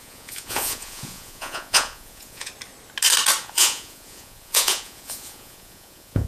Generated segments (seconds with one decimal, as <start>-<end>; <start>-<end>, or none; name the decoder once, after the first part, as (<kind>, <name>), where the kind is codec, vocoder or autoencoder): 0.0-2.5 (vocoder, Vocos); 3.4-6.3